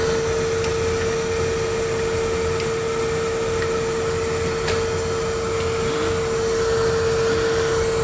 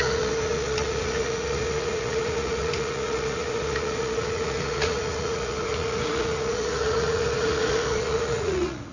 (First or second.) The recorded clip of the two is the first